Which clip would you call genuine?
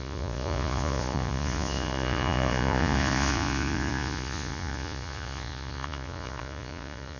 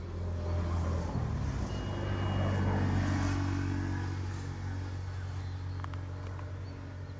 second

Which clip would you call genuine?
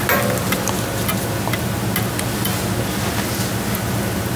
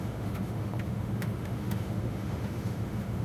first